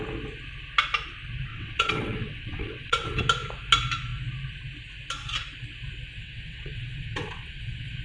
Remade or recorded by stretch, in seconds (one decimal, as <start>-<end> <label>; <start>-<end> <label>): 0.0-1.5 recorded; 1.5-3.2 remade; 3.2-6.1 recorded; 6.1-8.0 remade